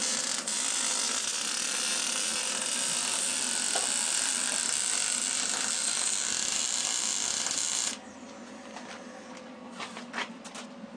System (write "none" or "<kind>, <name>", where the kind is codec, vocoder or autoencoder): none